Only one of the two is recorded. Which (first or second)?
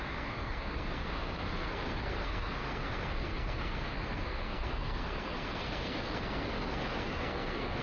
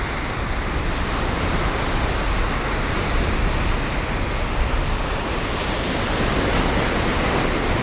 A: second